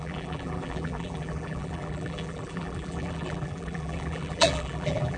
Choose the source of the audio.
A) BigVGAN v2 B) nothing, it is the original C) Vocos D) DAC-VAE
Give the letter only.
A